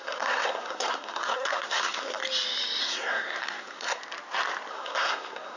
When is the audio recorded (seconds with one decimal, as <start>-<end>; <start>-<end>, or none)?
2.2-2.8; 4.0-4.7